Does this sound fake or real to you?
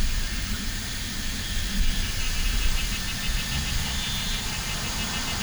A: real